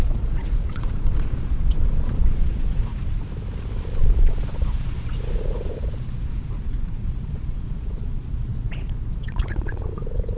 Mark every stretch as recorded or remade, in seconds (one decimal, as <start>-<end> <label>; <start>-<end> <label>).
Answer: 0.0-2.9 remade; 2.9-4.4 recorded; 4.4-10.4 remade